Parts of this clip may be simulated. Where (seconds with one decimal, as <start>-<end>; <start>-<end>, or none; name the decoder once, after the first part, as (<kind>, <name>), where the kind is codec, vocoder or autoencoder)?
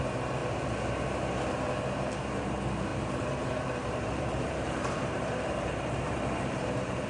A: 2.9-7.1 (vocoder, BigVGAN v2)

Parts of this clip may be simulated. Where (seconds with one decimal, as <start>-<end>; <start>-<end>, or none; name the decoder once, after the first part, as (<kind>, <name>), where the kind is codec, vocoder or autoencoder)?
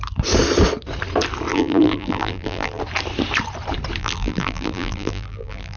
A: 1.5-2.8 (vocoder, BigVGAN v2); 4.0-5.8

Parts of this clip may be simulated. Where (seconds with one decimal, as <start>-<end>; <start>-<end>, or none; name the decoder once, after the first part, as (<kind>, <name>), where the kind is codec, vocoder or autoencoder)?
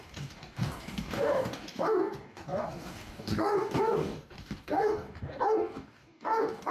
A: 0.0-6.7 (codec, DAC)